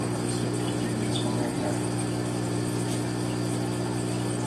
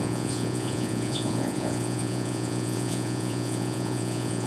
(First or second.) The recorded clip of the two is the first